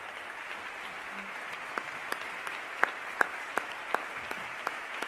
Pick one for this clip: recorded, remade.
recorded